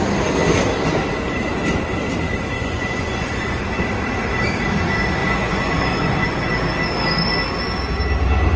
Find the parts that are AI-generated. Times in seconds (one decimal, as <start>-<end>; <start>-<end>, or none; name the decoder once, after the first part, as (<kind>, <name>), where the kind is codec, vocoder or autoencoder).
2.6-3.6 (vocoder, Vocos); 5.2-6.5